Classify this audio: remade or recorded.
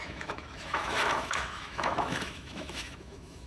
remade